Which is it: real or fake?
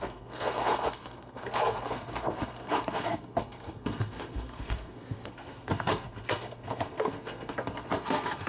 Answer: fake